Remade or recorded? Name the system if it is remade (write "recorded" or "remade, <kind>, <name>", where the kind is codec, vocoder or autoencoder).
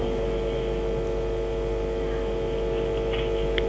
recorded